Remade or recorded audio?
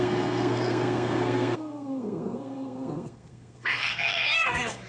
remade